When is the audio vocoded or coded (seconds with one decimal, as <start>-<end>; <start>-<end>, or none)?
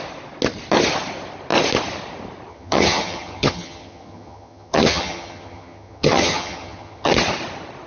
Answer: 2.5-7.1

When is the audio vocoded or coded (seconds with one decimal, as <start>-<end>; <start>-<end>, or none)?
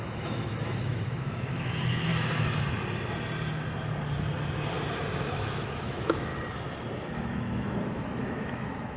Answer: 0.0-2.1; 5.2-6.3; 7.0-9.0